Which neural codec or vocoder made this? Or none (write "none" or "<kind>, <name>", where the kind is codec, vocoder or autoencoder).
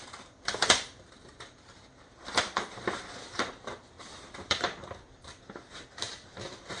vocoder, BigVGAN v2